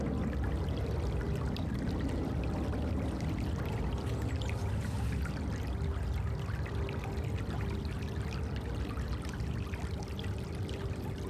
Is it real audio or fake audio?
real